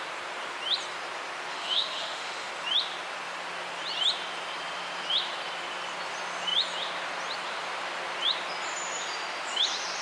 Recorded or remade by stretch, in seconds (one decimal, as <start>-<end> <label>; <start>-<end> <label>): 0.0-1.5 recorded; 1.5-2.5 remade; 2.5-10.0 recorded